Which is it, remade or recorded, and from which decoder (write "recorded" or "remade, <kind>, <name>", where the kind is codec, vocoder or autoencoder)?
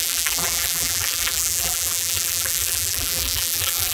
remade, vocoder, BigVGAN v2